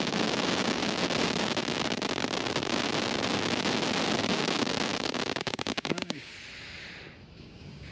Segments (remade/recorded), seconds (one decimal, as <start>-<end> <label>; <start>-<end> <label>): 0.0-0.8 remade; 0.8-4.4 recorded; 4.4-6.3 remade; 6.3-7.4 recorded; 7.4-7.9 remade